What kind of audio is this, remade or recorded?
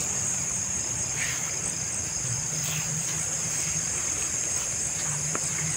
recorded